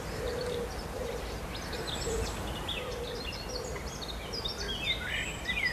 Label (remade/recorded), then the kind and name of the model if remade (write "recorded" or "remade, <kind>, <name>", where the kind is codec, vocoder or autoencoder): recorded